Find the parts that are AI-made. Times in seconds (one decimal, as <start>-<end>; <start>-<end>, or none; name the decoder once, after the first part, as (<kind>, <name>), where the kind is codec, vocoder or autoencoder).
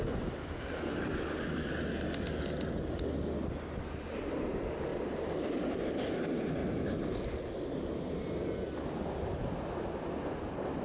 none